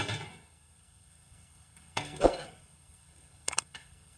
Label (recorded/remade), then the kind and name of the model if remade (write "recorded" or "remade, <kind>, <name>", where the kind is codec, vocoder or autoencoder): remade, codec, SNAC